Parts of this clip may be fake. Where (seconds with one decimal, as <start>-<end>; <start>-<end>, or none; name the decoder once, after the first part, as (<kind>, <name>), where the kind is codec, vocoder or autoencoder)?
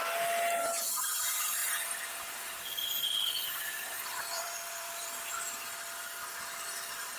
1.6-5.3 (vocoder, BigVGAN v2)